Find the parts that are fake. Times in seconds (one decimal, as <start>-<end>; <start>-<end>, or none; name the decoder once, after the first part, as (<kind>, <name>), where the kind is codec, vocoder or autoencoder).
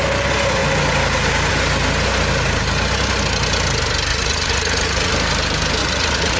4.1-5.1 (vocoder, Vocos); 5.8-6.4